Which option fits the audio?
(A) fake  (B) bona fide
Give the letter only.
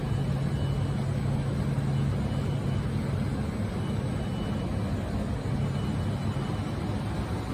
B